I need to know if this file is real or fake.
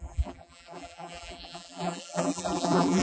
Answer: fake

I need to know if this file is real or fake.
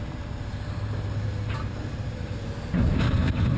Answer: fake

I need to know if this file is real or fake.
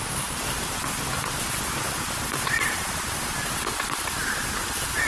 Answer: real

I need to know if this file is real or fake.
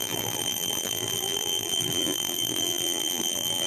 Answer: fake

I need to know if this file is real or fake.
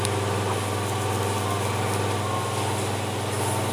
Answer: real